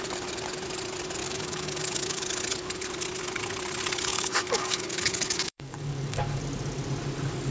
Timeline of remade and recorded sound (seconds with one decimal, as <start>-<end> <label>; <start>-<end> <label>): 0.0-1.2 recorded; 1.2-2.2 remade; 2.2-4.1 recorded; 4.1-6.4 remade; 6.4-7.5 recorded